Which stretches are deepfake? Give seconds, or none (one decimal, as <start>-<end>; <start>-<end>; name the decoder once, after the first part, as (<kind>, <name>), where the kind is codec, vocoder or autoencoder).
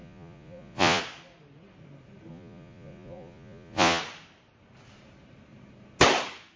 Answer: 0.0-1.0 (vocoder, Vocos); 2.3-4.0